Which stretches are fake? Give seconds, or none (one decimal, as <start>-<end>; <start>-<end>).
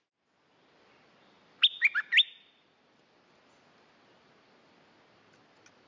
none